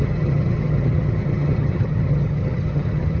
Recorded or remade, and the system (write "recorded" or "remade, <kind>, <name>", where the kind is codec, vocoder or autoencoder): remade, vocoder, HiFi-GAN